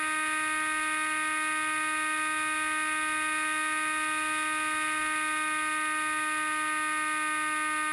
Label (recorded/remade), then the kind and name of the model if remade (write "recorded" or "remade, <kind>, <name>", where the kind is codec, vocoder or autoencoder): recorded